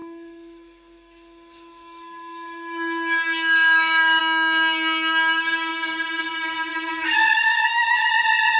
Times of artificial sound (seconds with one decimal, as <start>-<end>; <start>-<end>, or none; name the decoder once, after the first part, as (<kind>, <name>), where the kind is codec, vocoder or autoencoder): 0.0-4.2 (codec, DAC); 6.7-8.1